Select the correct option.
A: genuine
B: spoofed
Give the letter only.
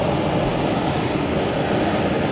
A